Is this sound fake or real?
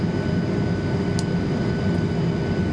real